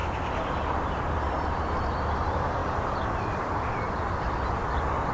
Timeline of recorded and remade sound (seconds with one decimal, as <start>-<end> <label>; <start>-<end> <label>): 0.0-1.1 remade; 1.1-2.6 recorded; 2.6-4.6 remade; 4.6-5.1 recorded